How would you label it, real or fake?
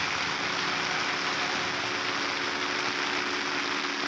real